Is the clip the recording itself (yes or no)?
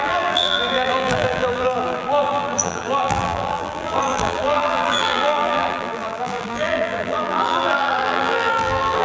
no